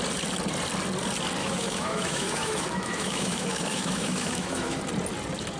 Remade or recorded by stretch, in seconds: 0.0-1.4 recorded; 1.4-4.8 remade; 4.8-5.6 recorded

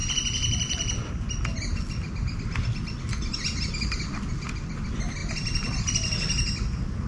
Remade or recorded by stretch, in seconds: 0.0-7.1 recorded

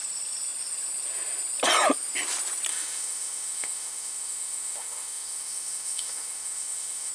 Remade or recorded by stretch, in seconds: 0.0-2.7 recorded; 2.7-7.1 remade

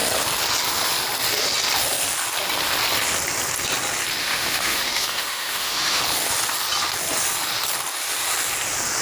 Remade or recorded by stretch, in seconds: 0.0-4.2 recorded; 4.2-6.0 remade; 6.0-9.0 recorded

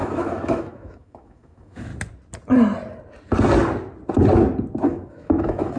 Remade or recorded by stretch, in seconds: 0.0-1.9 remade; 1.9-4.8 recorded; 4.8-5.8 remade

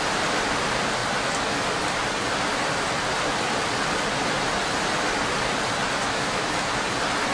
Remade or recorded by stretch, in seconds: 0.0-6.0 recorded; 6.0-6.8 remade; 6.8-7.3 recorded

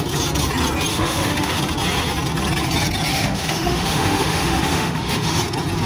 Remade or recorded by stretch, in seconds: 0.0-0.9 recorded; 0.9-1.6 remade; 1.6-3.1 recorded; 3.1-5.4 remade; 5.4-5.9 recorded

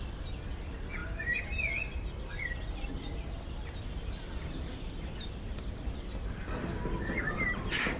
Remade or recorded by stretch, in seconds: 0.0-8.0 recorded